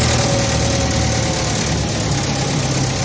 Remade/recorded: recorded